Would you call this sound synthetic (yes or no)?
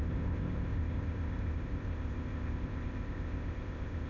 yes